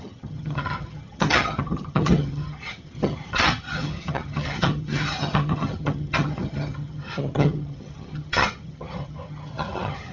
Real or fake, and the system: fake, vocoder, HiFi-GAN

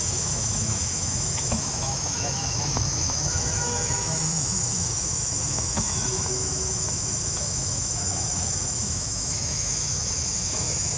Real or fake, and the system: fake, autoencoder, DAC-VAE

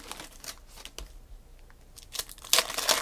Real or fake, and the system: real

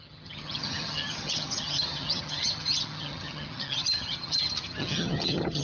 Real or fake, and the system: fake, vocoder, HiFi-GAN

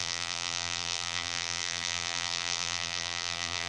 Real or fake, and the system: fake, vocoder, BigVGAN v2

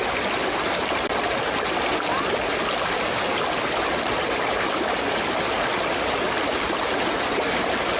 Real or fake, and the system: real